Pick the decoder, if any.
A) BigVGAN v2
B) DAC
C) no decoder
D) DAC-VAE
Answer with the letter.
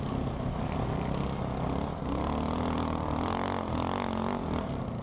C